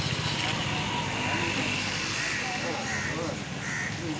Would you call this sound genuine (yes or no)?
yes